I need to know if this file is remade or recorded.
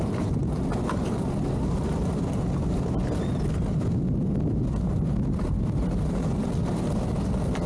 recorded